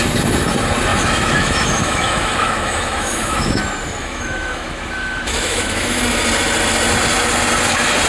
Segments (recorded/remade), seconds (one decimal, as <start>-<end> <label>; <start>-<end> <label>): 0.0-0.9 recorded; 0.9-3.6 remade; 3.6-4.0 recorded; 4.0-6.0 remade; 6.0-8.1 recorded